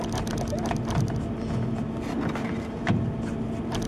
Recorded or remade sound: recorded